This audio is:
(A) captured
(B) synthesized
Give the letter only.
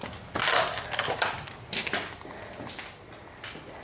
A